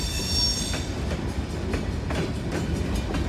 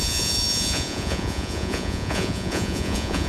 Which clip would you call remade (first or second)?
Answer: second